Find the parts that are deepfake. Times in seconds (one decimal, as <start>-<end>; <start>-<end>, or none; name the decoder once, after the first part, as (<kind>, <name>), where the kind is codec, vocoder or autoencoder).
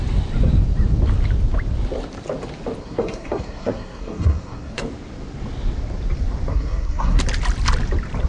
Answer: 2.8-4.8 (codec, SNAC); 6.5-7.2